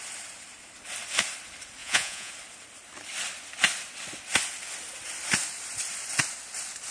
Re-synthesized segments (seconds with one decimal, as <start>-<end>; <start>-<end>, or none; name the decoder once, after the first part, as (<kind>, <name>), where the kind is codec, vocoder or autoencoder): 1.8-2.3 (vocoder, Vocos)